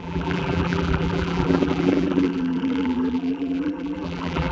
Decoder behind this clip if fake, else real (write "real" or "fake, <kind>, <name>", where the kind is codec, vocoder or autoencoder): fake, vocoder, BigVGAN v2